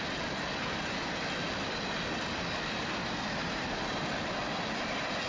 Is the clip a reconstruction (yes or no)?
no